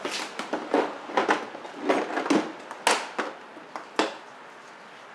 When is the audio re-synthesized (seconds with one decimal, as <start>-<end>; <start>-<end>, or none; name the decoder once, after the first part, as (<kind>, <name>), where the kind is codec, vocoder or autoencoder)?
none